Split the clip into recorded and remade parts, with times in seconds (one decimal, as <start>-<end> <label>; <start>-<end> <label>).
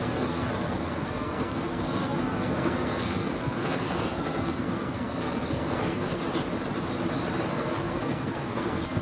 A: 0.0-6.2 remade; 6.2-7.5 recorded; 7.5-9.0 remade